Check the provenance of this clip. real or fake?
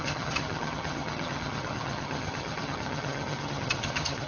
fake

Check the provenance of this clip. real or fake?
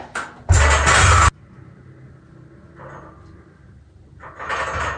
real